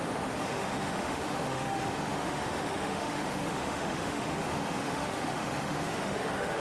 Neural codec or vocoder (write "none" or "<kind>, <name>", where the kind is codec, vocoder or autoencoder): autoencoder, DAC-VAE